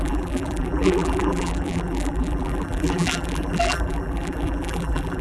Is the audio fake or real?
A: fake